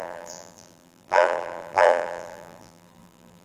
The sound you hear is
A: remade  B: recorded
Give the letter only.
A